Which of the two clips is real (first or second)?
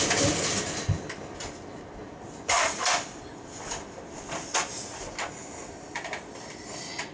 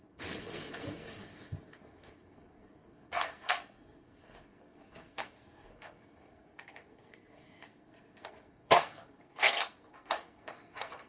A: first